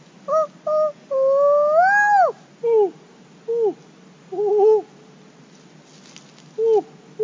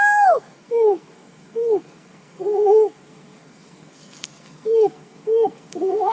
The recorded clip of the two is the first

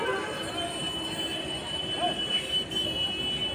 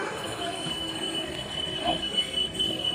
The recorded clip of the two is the first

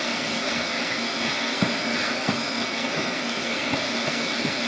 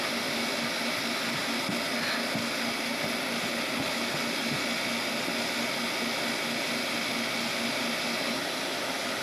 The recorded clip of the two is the second